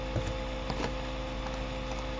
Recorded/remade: recorded